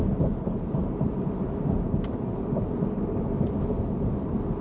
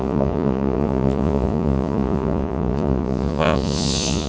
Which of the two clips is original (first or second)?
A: first